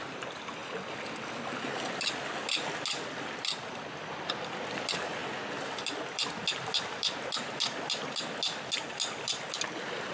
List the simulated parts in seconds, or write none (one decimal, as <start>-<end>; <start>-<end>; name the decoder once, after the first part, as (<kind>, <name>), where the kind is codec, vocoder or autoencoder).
none